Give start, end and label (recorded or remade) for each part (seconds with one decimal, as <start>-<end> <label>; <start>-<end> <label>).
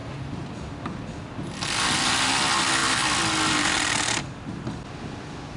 0.0-5.6 recorded